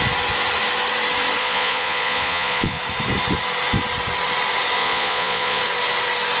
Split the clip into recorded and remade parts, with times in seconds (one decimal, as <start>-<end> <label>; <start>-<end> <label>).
0.0-1.4 recorded; 1.4-2.8 remade; 2.8-4.8 recorded; 4.8-5.6 remade; 5.6-6.4 recorded

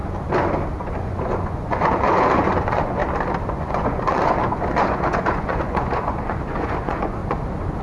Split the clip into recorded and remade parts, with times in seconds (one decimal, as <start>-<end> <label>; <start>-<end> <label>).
0.0-0.8 recorded; 0.8-3.0 remade; 3.0-3.5 recorded; 3.5-7.2 remade; 7.2-7.8 recorded

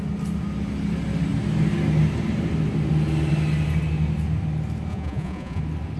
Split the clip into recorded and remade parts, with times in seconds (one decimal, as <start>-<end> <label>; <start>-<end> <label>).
0.0-4.9 recorded; 4.9-5.6 remade; 5.6-6.0 recorded

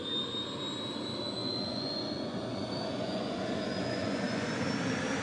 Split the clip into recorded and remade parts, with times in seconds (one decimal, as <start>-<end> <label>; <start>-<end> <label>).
0.0-1.4 recorded; 1.4-4.5 remade; 4.5-5.2 recorded

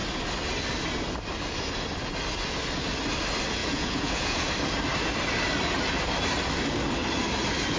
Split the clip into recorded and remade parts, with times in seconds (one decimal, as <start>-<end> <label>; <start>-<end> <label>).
0.0-3.6 recorded; 3.6-4.5 remade; 4.5-7.8 recorded

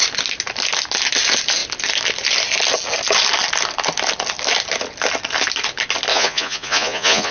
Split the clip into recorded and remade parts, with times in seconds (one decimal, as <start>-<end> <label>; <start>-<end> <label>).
0.0-6.1 recorded; 6.1-7.3 remade

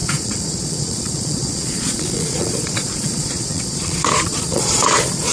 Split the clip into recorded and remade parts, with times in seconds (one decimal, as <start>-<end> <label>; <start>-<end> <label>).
0.0-5.3 remade